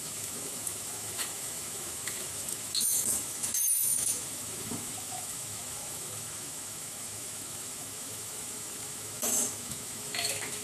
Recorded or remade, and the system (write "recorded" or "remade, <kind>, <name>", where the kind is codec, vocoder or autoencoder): remade, autoencoder, DAC-VAE